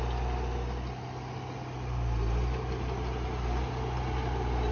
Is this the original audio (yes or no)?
yes